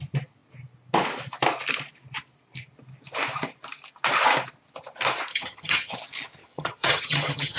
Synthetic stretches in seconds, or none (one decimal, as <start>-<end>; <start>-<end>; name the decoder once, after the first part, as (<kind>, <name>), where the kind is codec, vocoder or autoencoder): 5.3-5.9 (vocoder, HiFi-GAN); 6.4-7.6